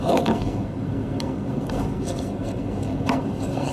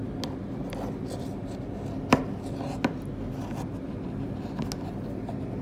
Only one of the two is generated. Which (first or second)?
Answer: first